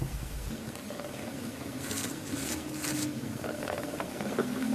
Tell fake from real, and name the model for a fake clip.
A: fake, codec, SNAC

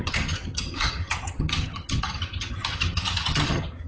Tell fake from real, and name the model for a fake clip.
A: fake, vocoder, HiFi-GAN